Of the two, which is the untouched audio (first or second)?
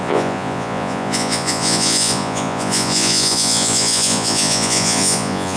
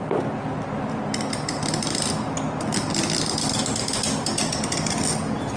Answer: second